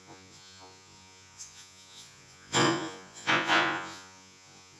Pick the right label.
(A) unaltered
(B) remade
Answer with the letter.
B